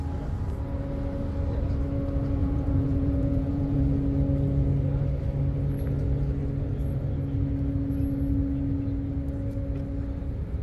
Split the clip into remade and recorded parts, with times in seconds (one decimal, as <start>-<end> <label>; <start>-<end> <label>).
0.0-2.4 recorded; 2.4-3.8 remade; 3.8-10.6 recorded